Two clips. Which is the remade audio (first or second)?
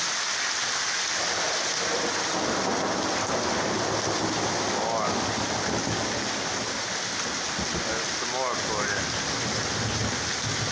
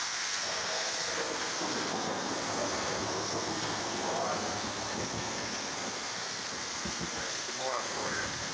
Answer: second